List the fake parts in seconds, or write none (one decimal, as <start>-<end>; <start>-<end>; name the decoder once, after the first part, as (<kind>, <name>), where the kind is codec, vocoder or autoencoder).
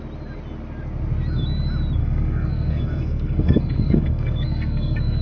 2.0-5.2 (codec, SNAC)